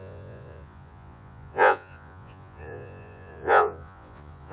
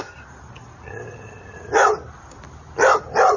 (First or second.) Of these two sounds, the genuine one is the second